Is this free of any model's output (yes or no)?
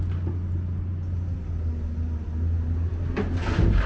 yes